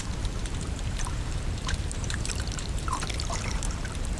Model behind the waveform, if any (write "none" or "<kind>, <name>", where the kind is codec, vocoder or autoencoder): vocoder, BigVGAN v2